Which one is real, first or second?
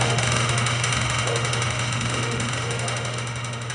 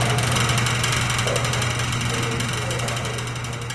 second